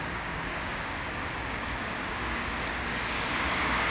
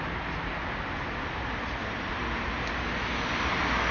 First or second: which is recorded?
second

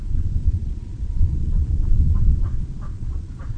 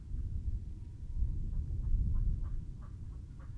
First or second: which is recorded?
second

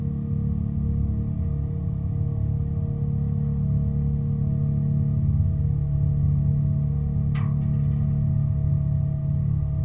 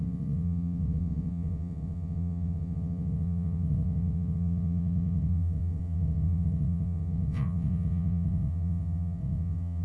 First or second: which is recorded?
first